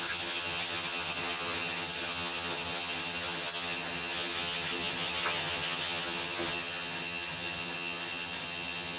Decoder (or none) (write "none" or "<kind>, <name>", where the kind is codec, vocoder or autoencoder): vocoder, HiFi-GAN